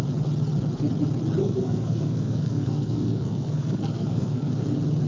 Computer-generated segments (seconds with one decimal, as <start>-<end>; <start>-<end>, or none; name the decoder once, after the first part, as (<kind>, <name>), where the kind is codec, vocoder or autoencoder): 1.4-4.5 (codec, SNAC)